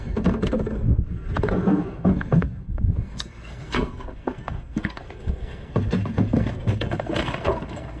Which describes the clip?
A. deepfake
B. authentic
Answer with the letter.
A